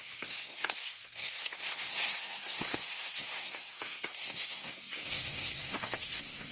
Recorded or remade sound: remade